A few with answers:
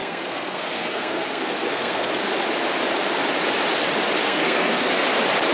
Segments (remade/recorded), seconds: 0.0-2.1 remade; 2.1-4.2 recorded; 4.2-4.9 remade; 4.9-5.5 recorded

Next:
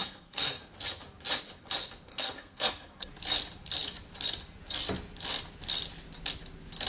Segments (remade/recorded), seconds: 0.0-0.6 remade; 0.6-2.1 recorded; 2.1-3.1 remade; 3.1-6.9 recorded

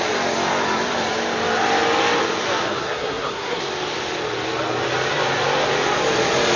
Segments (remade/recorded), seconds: 0.0-2.8 recorded; 2.8-3.6 remade; 3.6-6.6 recorded

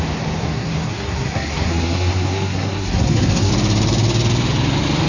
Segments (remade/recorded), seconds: 0.0-0.4 recorded; 0.4-3.5 remade; 3.5-5.1 recorded